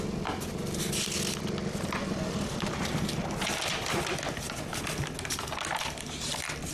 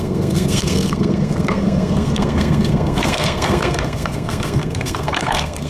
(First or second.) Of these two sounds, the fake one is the second